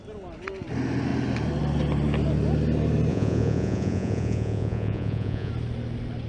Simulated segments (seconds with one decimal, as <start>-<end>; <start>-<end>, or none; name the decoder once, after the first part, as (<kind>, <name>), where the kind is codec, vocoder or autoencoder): 3.1-5.5 (vocoder, Vocos)